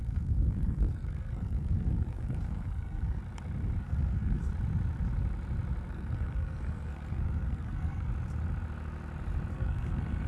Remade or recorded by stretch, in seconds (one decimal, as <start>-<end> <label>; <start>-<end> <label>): 0.0-3.2 remade; 3.2-3.8 recorded; 3.8-4.5 remade; 4.5-5.9 recorded; 5.9-8.1 remade; 8.1-9.5 recorded; 9.5-10.3 remade